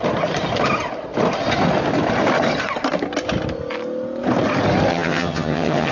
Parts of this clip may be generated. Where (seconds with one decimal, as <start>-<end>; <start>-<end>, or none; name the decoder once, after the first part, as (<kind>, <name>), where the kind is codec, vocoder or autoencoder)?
4.9-5.9 (vocoder, HiFi-GAN)